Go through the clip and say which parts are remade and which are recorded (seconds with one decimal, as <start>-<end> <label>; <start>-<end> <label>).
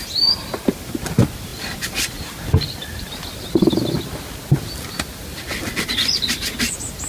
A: 0.0-7.1 recorded